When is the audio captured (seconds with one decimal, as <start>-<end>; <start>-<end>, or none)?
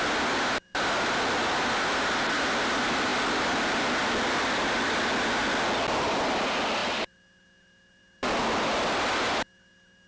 0.0-10.1